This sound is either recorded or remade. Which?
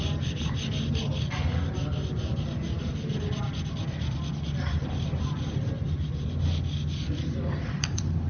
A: recorded